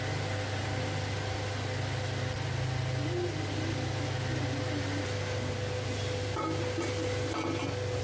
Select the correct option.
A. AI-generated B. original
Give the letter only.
B